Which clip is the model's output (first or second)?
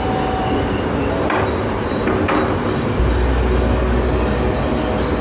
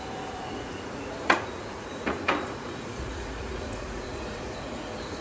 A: second